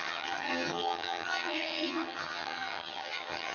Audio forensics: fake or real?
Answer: fake